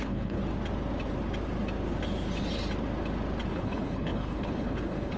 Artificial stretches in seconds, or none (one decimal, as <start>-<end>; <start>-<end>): 0.0-0.4; 3.5-5.2